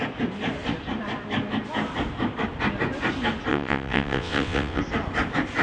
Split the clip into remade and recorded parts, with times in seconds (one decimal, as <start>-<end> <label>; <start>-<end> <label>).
0.0-3.5 recorded; 3.5-4.8 remade; 4.8-5.6 recorded

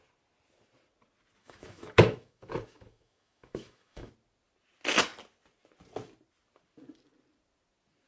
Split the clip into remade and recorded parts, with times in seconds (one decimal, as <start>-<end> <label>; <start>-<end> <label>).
0.0-1.4 recorded; 1.4-4.1 remade; 4.1-8.1 recorded

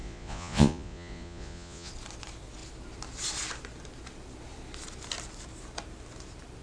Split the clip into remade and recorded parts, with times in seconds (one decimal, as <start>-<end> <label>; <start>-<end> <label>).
0.0-1.9 remade; 1.9-6.6 recorded

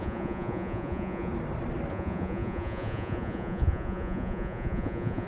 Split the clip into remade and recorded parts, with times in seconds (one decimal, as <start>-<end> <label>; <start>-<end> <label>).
0.0-1.3 remade; 1.3-1.9 recorded; 1.9-5.3 remade